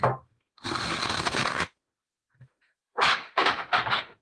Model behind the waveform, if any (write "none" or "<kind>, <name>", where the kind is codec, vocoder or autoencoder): autoencoder, DAC-VAE